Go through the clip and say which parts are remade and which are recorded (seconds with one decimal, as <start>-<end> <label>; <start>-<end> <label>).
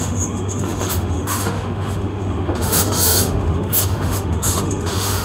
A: 0.0-5.2 remade